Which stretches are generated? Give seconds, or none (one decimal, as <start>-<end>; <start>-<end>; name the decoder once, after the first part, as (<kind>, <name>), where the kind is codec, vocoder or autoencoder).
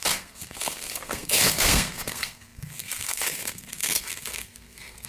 0.0-5.1 (codec, SNAC)